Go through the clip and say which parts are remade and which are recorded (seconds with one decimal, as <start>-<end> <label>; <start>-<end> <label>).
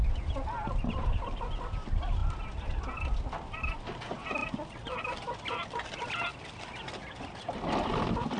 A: 0.0-8.4 recorded